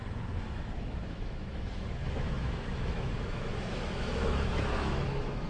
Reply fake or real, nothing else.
fake